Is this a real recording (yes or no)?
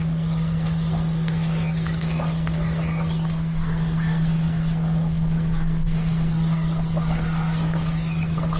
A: no